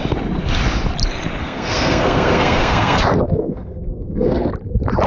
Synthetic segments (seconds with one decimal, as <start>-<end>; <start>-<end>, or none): 1.4-4.5